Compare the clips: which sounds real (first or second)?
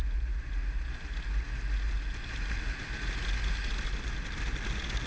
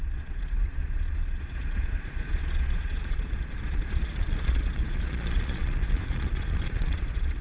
first